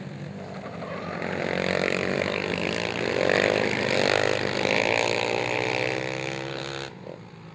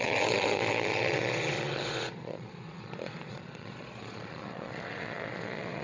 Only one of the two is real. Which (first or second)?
first